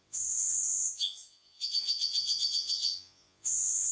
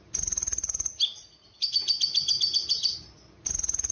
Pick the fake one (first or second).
first